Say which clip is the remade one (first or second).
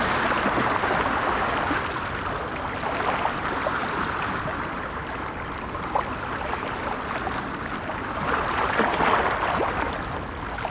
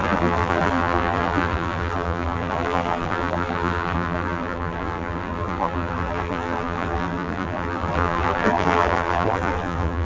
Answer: second